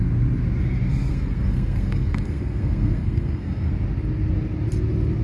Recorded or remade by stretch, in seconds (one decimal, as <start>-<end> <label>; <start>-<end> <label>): 0.0-0.9 recorded; 0.9-3.7 remade; 3.7-5.2 recorded